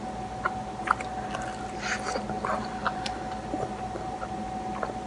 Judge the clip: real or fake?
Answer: real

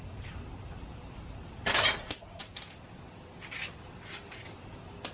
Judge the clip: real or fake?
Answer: real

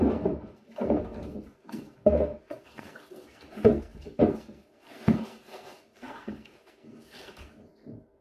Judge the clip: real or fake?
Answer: fake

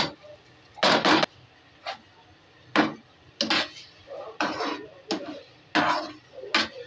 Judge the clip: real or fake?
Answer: real